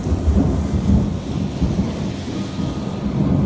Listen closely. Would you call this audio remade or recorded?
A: recorded